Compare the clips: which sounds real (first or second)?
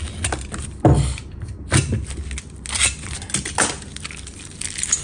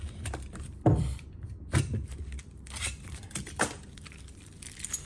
first